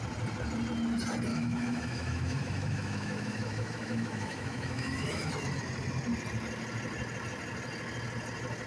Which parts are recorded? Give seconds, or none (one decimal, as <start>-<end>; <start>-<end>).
0.0-1.3; 5.3-8.7